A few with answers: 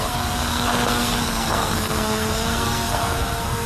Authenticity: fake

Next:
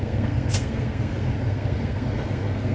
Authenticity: fake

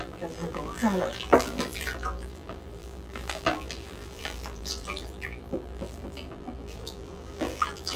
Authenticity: fake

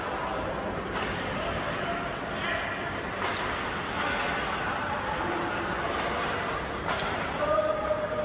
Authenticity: real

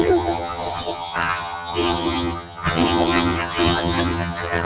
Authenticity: fake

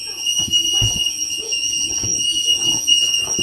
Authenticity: fake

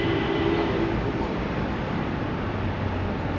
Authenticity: real